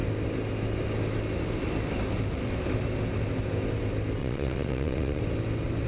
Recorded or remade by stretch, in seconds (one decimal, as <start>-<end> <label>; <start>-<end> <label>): 0.0-4.2 recorded; 4.2-5.2 remade; 5.2-5.9 recorded